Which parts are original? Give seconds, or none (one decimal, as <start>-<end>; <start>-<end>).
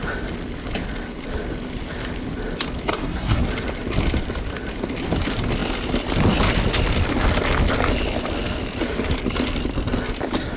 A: 0.0-2.9; 3.4-10.6